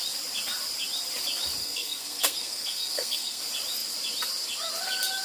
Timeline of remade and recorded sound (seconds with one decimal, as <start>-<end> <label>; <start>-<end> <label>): 0.0-1.6 recorded; 1.6-3.4 remade; 3.4-5.2 recorded